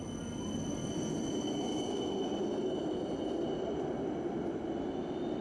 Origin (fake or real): real